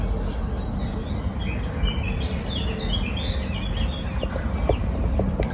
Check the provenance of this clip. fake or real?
real